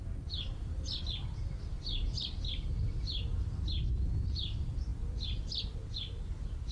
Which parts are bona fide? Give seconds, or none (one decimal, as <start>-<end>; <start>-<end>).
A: 0.0-6.7